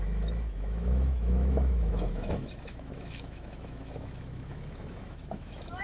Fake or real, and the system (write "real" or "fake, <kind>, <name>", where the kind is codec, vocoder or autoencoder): fake, autoencoder, DAC-VAE